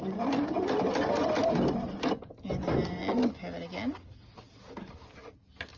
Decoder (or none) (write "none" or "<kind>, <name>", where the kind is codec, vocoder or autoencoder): none